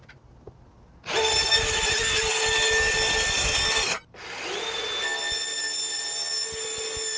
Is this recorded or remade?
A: recorded